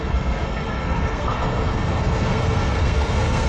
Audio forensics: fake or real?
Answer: fake